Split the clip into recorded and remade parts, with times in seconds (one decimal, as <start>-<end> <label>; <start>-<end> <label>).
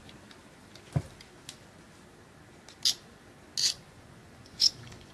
0.0-3.6 recorded; 3.6-5.1 remade